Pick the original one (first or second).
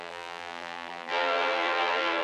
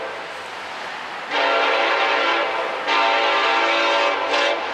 second